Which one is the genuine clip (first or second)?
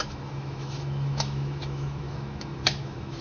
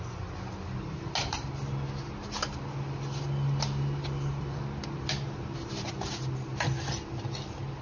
second